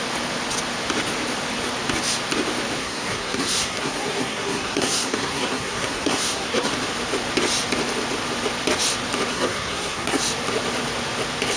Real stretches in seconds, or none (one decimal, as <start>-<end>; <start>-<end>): 0.0-2.8; 6.7-9.3; 10.2-11.6